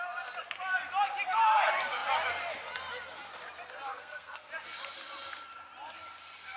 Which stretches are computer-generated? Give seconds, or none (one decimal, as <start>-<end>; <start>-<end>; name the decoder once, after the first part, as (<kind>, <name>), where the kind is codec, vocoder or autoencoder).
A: 3.9-4.5 (codec, SNAC)

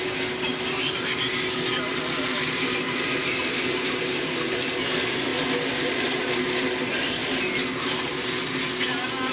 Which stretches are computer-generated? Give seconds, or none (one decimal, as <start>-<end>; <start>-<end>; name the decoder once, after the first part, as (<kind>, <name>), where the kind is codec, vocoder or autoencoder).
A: none